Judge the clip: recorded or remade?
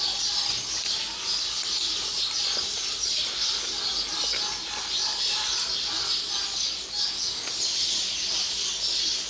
recorded